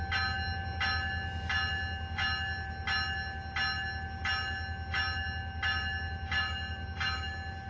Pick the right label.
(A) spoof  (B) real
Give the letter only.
B